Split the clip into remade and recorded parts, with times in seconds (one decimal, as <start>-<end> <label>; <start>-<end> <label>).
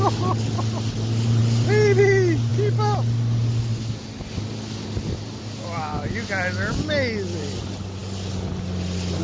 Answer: 0.0-9.2 recorded